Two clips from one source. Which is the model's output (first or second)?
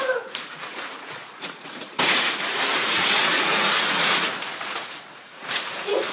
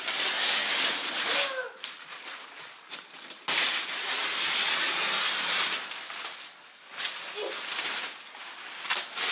first